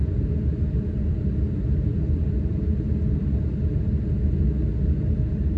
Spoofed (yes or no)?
no